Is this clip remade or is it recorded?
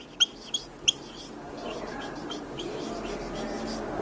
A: recorded